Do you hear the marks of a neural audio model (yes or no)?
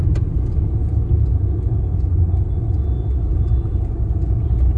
no